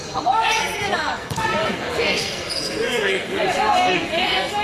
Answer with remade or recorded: remade